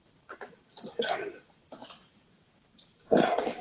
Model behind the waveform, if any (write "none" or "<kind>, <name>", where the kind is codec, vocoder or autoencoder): vocoder, BigVGAN v2